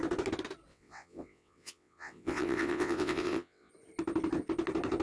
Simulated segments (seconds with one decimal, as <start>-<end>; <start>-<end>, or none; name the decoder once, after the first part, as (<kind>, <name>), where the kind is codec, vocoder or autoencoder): 0.7-3.7 (vocoder, WaveNeXt)